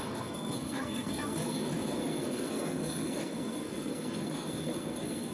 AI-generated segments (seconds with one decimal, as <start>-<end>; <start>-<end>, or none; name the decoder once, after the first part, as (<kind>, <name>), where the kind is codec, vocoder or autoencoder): 0.0-5.3 (codec, SNAC)